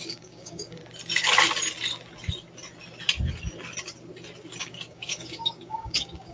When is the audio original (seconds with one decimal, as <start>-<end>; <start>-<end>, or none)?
0.8-4.6